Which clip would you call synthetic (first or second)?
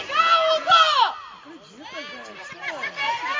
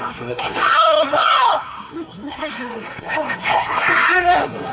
second